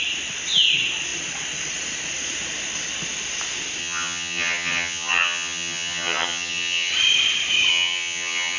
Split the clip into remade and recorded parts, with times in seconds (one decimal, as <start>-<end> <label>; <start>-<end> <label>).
0.0-3.8 recorded; 3.8-6.9 remade; 6.9-7.7 recorded; 7.7-8.6 remade